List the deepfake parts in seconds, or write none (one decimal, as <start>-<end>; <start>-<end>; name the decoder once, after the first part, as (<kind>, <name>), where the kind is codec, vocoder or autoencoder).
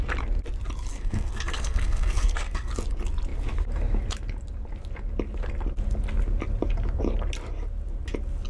0.9-2.7 (codec, SNAC)